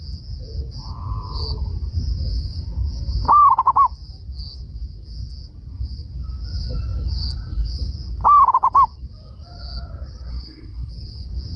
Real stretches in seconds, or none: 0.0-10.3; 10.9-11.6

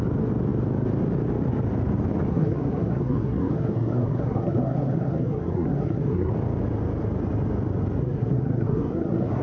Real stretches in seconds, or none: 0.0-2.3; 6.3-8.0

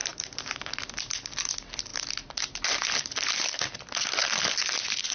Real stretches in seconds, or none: 0.0-5.1